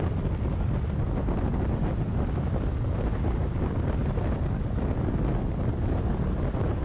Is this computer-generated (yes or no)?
no